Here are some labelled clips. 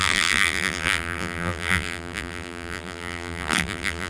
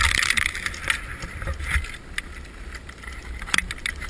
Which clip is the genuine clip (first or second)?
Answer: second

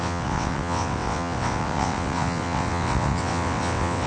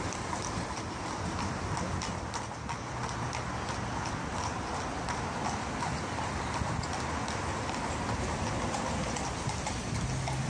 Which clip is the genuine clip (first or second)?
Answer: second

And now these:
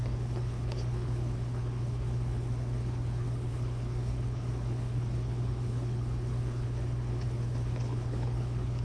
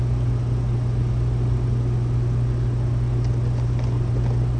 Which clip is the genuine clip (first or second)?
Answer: second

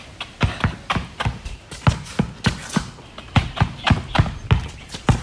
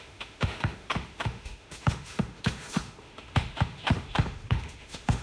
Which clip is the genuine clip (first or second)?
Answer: first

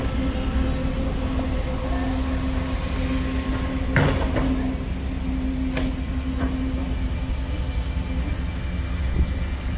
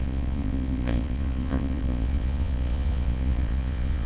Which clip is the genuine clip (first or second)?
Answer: first